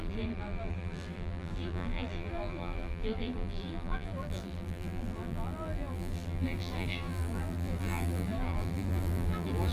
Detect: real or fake fake